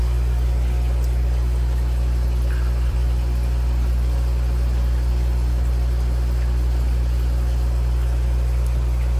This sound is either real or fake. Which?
real